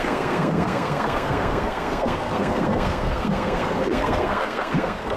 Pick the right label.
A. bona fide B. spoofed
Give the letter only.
B